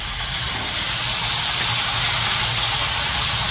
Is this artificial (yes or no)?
no